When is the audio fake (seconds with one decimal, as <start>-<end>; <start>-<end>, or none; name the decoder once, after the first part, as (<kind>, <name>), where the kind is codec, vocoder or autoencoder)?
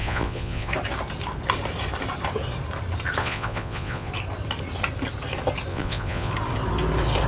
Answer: 0.0-0.7 (vocoder, Vocos); 3.2-4.1; 5.7-6.3